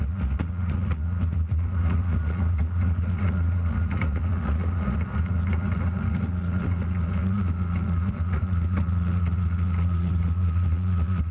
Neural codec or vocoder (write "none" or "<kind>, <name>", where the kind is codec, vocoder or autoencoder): vocoder, Vocos